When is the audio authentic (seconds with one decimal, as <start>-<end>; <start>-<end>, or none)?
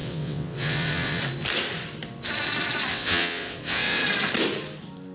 1.2-2.9; 4.0-5.1